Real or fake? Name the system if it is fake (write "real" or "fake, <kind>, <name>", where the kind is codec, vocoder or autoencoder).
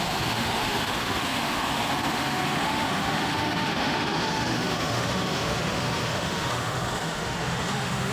fake, autoencoder, DAC-VAE